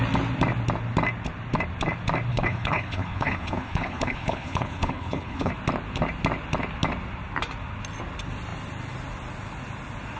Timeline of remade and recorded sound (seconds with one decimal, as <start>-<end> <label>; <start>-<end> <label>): 0.0-2.3 recorded; 2.3-5.5 remade; 5.5-10.2 recorded